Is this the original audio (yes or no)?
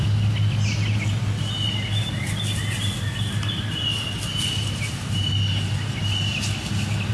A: yes